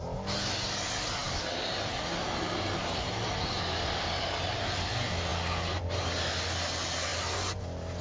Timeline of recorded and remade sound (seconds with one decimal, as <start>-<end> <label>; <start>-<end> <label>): 0.0-8.0 recorded